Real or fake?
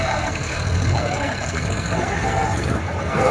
fake